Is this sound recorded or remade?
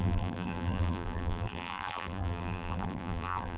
remade